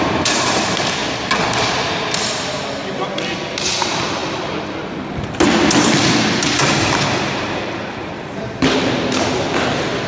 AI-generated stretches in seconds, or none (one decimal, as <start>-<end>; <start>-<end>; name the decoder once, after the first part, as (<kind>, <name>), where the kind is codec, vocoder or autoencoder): none